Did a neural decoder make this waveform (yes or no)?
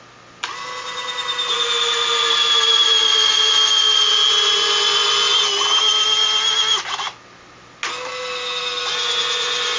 no